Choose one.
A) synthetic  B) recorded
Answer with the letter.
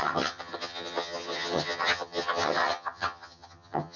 A